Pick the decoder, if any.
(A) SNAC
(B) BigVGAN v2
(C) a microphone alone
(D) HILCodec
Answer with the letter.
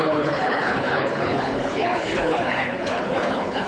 D